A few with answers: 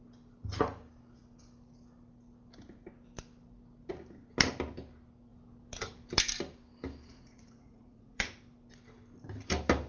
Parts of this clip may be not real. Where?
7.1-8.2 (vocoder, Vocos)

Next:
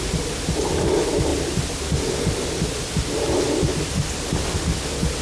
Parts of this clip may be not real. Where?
none

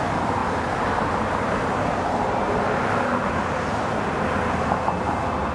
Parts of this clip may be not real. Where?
none